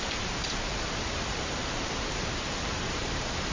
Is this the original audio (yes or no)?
no